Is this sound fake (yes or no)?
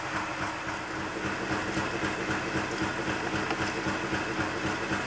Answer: no